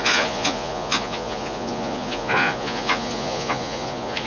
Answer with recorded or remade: remade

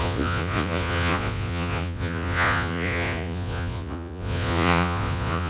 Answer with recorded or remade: remade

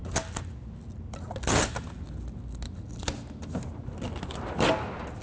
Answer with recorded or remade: recorded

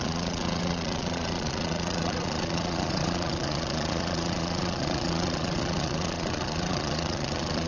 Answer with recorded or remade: remade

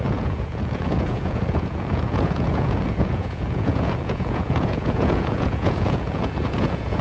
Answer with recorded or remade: remade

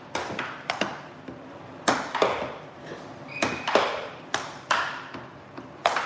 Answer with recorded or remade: recorded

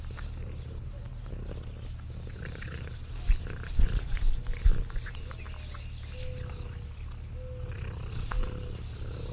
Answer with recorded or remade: recorded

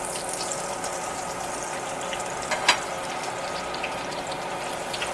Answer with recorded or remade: recorded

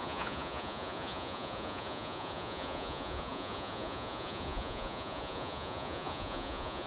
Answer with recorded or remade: remade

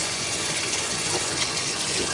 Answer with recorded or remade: remade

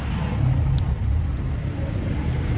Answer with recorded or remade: recorded